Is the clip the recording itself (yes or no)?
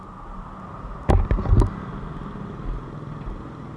yes